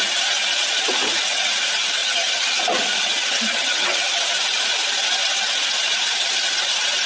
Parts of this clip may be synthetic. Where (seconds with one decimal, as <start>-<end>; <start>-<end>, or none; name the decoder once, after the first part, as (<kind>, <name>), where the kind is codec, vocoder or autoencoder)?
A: 2.0-2.6 (vocoder, HiFi-GAN); 3.2-4.0